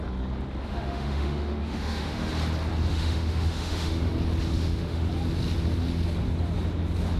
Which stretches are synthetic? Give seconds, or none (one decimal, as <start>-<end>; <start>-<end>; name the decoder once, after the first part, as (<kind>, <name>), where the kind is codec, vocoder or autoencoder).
0.7-2.3 (autoencoder, DAC-VAE); 2.9-4.1; 4.5-5.1